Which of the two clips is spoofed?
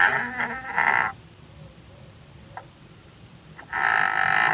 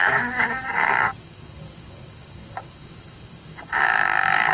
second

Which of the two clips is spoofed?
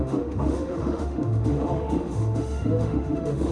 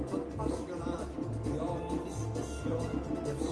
first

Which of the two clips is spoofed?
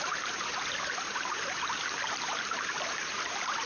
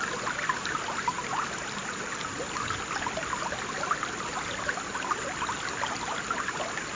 first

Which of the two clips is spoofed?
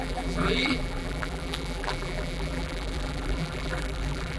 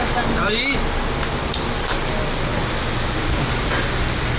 first